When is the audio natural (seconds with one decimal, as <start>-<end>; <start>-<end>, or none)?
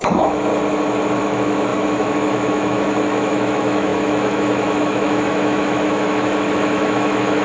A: 0.5-1.2